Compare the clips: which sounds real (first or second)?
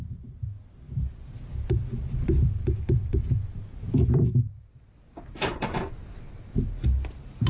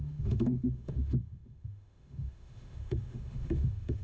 first